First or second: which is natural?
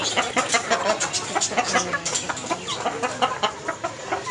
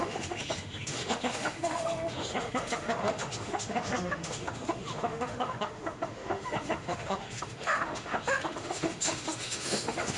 first